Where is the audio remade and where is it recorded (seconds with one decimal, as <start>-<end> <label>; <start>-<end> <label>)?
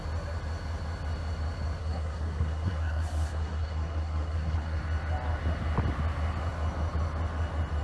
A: 0.0-1.8 recorded; 1.8-4.8 remade; 4.8-7.8 recorded